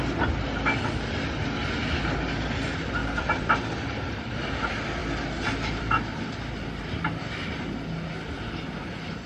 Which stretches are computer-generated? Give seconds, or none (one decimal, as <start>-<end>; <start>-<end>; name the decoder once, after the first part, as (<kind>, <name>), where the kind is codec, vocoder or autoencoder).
3.0-4.3 (vocoder, BigVGAN v2); 5.0-7.2